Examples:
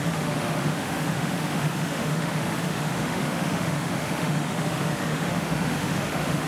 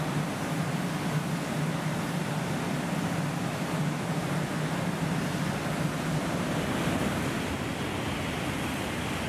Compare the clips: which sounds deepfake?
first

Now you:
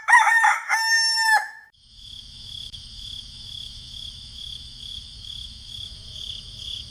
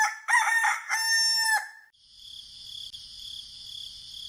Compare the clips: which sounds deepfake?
first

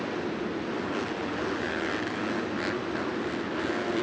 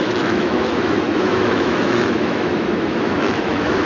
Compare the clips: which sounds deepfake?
second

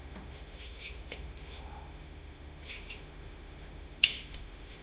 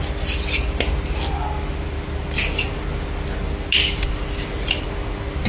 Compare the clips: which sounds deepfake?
first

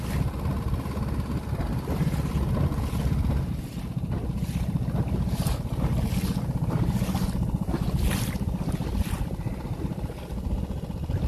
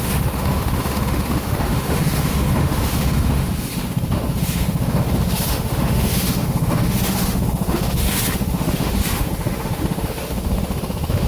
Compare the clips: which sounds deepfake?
second